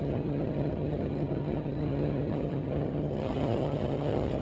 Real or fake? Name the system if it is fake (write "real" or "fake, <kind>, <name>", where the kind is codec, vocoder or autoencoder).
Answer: fake, vocoder, HiFi-GAN